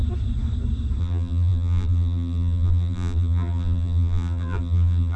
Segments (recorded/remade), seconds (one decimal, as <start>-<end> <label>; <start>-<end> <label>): 0.0-1.0 recorded; 1.0-5.2 remade